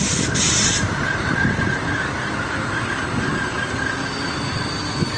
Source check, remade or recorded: recorded